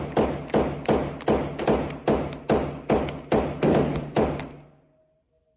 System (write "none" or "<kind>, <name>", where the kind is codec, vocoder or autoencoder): none